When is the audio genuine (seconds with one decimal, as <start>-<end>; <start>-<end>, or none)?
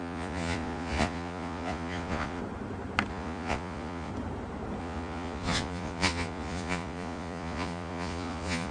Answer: 2.4-3.1; 4.1-4.8